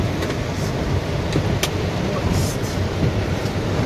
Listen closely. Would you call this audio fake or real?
real